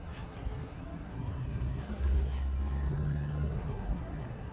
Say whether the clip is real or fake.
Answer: fake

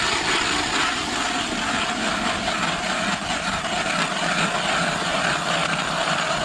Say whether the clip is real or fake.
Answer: real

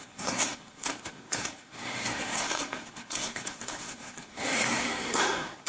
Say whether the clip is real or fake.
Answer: fake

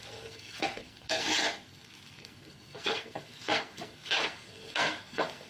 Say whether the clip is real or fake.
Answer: fake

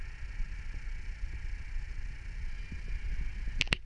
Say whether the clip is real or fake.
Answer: real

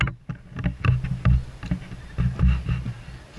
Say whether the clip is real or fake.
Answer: real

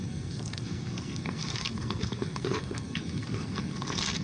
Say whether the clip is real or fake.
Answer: fake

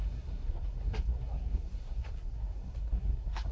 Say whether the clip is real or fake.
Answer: fake